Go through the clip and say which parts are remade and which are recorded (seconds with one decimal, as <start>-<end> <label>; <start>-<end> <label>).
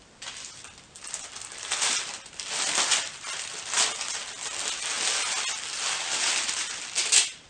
0.0-7.5 recorded